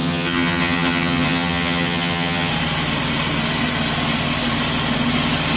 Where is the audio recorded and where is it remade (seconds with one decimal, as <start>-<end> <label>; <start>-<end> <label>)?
0.0-2.5 remade; 2.5-5.6 recorded